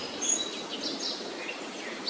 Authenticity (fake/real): real